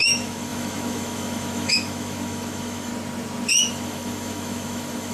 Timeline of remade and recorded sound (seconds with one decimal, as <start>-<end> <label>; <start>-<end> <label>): 0.0-2.9 remade; 2.9-3.7 recorded; 3.7-5.1 remade